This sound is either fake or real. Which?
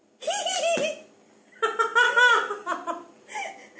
real